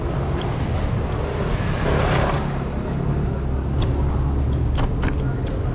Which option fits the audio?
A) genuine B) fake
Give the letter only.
A